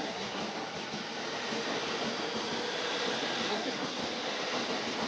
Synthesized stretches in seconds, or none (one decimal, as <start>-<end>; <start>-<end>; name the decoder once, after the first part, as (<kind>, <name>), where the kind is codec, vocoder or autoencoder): 0.0-0.4 (codec, SNAC); 3.5-4.0